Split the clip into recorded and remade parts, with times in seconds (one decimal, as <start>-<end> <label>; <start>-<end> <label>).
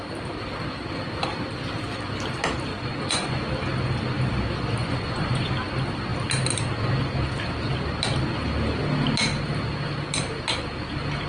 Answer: 0.0-2.7 recorded; 2.7-3.4 remade; 3.4-4.8 recorded; 4.8-5.5 remade; 5.5-11.3 recorded